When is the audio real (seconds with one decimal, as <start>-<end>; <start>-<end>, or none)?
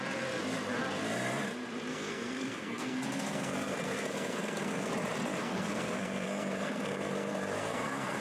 0.0-1.9; 4.9-5.4